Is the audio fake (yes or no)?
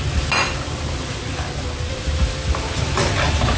no